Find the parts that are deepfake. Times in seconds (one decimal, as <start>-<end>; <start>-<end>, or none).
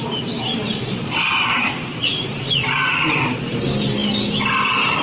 0.6-3.6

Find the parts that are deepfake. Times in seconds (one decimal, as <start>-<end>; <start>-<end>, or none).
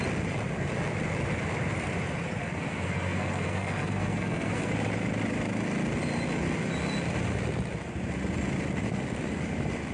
2.4-4.7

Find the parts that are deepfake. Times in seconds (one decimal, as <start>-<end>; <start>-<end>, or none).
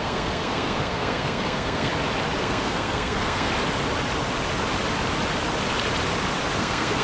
0.0-1.9; 2.4-3.5; 6.6-7.0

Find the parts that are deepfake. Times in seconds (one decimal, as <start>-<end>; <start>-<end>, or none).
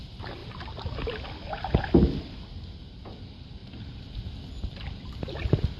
3.6-4.5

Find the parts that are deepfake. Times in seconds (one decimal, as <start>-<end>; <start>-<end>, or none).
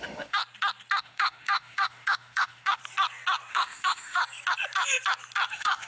0.0-0.4; 1.0-2.8; 3.5-4.2; 5.5-5.9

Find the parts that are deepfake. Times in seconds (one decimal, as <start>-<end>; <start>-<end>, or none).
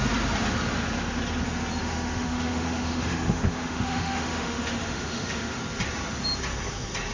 1.8-5.6